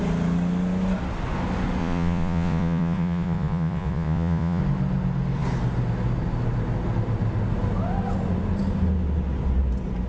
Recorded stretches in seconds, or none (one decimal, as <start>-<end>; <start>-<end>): 0.0-1.8; 4.6-10.1